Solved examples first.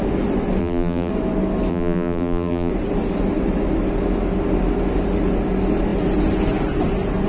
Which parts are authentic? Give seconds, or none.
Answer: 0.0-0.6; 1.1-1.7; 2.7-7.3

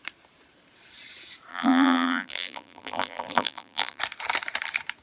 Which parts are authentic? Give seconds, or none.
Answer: 0.0-1.5; 4.0-5.0